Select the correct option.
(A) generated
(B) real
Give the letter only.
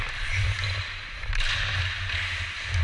B